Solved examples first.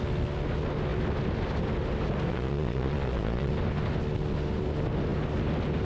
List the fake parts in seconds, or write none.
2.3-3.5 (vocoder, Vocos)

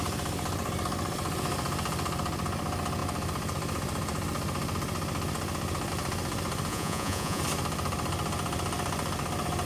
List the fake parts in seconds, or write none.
6.7-7.4 (vocoder, Vocos)